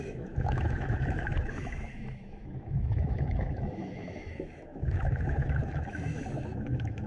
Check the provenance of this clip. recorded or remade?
remade